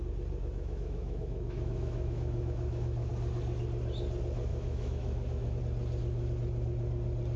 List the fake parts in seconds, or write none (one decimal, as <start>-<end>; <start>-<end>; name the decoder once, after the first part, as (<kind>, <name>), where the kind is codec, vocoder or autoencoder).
0.4-3.1 (autoencoder, DAC-VAE); 4.5-5.6